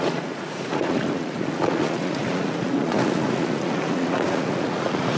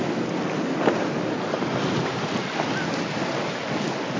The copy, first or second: first